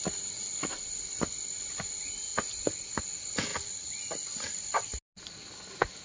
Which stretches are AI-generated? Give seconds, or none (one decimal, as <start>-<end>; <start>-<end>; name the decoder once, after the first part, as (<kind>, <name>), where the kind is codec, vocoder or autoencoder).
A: none

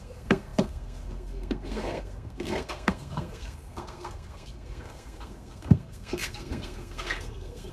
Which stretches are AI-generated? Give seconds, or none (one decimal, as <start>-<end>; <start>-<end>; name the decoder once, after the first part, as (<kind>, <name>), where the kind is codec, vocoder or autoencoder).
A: 0.0-7.7 (codec, SNAC)

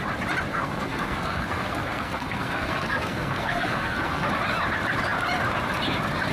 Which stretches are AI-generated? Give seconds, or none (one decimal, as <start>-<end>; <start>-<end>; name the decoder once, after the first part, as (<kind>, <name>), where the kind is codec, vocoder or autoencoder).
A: 0.5-4.3 (codec, SNAC)